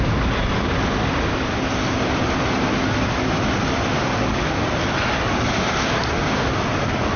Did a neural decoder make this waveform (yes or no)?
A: no